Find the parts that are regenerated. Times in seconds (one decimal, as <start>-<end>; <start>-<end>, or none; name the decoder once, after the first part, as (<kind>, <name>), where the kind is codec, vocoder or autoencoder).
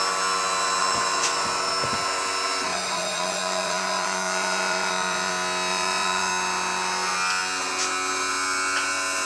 0.8-1.7 (vocoder, Vocos); 2.7-5.3; 5.7-6.3